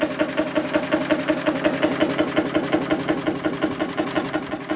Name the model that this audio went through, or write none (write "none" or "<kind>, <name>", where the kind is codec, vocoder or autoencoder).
none